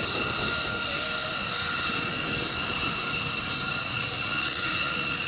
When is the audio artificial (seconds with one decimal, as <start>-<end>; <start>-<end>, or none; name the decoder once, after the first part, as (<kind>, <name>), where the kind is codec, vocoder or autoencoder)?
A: 3.7-5.3 (vocoder, Vocos)